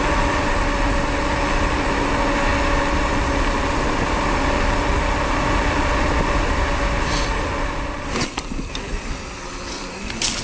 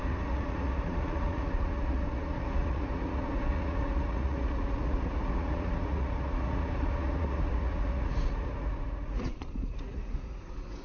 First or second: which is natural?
first